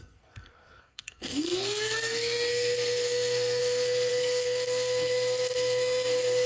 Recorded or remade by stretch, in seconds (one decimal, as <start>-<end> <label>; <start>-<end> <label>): 0.0-6.5 remade